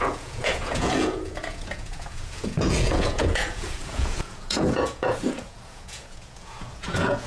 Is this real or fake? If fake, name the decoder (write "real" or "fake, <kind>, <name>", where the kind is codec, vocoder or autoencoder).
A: fake, vocoder, Vocos